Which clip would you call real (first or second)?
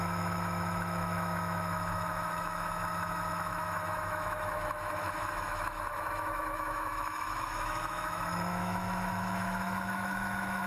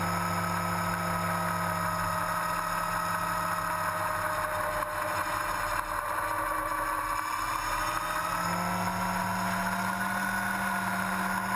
second